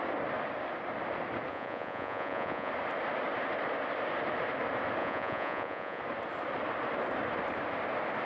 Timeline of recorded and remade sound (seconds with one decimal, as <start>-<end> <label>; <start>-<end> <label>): 0.0-1.5 recorded; 1.5-2.7 remade; 2.7-5.0 recorded; 5.0-6.0 remade; 6.0-8.3 recorded